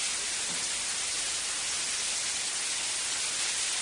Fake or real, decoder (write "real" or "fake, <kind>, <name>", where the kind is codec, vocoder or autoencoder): real